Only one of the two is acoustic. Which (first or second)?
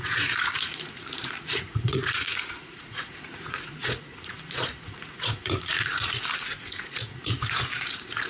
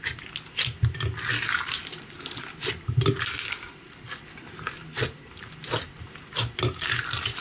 second